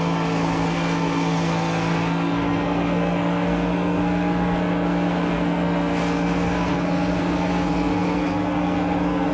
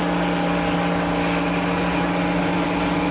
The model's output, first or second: first